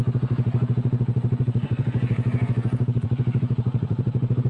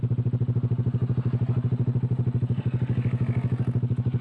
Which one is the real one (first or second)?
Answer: second